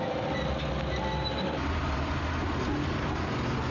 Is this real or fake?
real